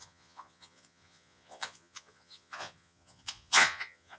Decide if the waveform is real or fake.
fake